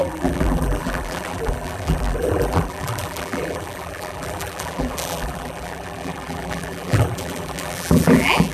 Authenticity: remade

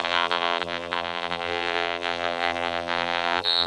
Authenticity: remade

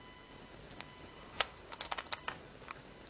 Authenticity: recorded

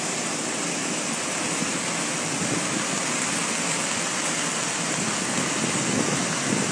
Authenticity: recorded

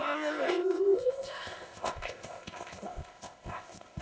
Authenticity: remade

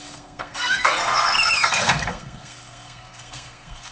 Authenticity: remade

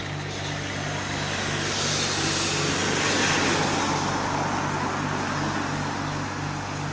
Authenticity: recorded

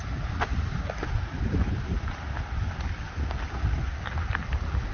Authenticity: recorded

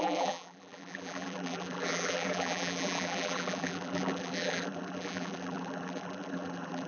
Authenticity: remade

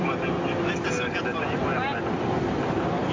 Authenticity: recorded